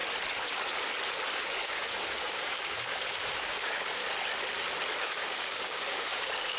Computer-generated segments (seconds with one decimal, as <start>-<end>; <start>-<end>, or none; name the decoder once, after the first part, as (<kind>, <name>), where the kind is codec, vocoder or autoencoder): 1.3-4.0 (codec, DAC); 5.0-6.6